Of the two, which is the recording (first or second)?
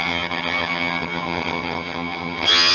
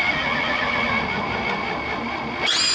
second